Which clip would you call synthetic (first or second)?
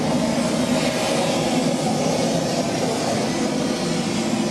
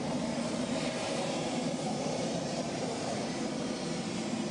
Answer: second